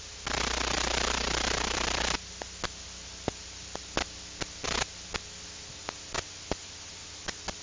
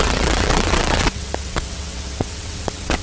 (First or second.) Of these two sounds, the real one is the first